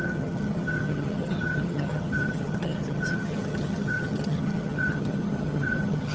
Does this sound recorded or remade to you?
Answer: remade